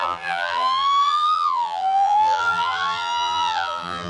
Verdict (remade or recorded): remade